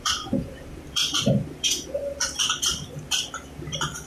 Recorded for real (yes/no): no